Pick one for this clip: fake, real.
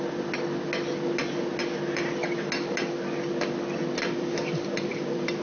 real